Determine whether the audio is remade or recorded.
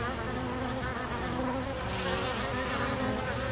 recorded